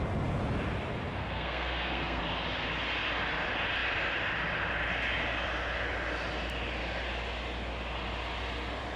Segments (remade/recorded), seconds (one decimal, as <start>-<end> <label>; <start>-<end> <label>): 0.0-1.2 recorded; 1.2-2.2 remade; 2.2-9.0 recorded